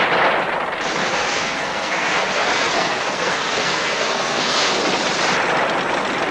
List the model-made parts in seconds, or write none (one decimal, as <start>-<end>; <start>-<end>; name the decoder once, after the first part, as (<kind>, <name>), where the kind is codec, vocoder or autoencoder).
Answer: 1.0-4.8 (codec, SNAC)